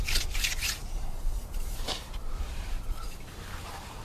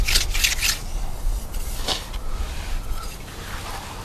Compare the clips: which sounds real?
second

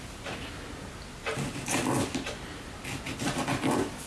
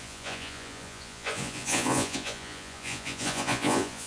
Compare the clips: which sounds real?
first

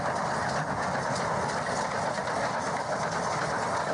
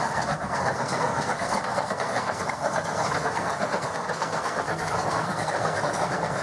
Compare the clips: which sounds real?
first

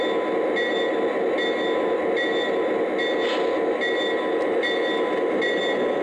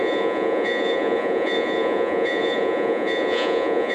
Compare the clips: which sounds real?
first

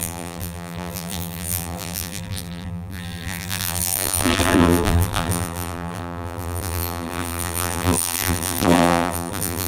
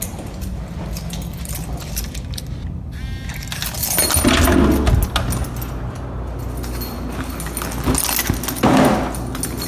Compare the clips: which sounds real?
second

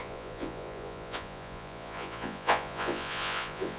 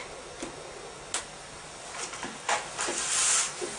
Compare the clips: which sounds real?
second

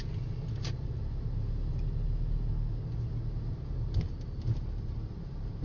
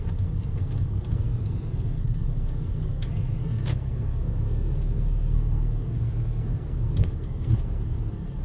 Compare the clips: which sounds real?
first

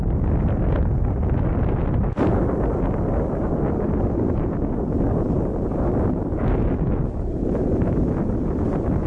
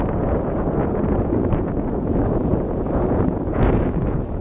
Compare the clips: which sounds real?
first